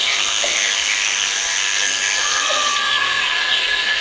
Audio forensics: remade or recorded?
remade